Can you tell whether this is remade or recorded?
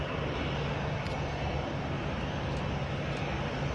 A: recorded